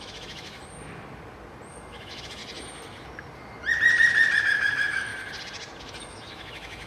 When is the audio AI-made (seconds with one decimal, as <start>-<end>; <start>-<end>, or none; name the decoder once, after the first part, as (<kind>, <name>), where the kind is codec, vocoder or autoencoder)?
0.0-0.6 (autoencoder, DAC-VAE); 1.7-2.4; 4.4-5.1; 5.8-6.9